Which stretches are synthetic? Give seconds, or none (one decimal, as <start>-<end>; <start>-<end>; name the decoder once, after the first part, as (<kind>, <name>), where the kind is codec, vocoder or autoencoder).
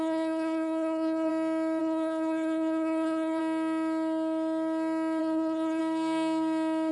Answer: 0.0-1.3 (codec, SNAC); 1.8-3.4; 5.2-5.8